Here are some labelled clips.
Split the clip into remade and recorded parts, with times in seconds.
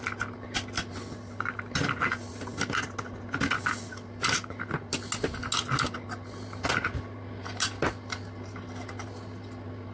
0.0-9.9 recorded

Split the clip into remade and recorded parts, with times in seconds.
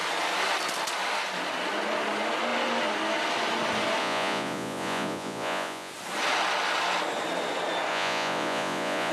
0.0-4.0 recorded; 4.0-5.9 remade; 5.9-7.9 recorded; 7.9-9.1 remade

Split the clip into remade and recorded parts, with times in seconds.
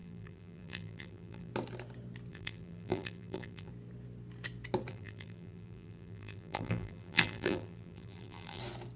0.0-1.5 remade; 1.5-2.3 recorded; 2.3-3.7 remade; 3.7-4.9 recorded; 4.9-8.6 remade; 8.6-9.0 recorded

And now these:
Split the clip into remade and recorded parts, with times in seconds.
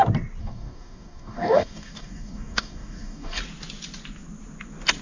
0.0-0.4 recorded; 0.4-3.4 remade; 3.4-5.0 recorded